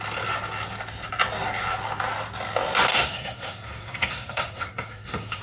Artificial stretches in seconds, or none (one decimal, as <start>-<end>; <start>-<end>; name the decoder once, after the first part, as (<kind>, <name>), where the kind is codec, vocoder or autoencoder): 2.9-5.4 (codec, SNAC)